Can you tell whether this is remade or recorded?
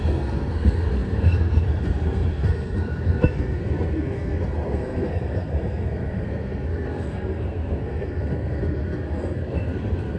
remade